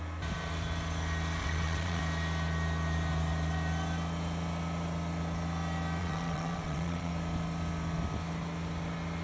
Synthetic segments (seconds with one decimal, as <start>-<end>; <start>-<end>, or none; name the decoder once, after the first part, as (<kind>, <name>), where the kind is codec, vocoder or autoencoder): 1.4-2.0 (vocoder, WaveNeXt); 6.0-7.1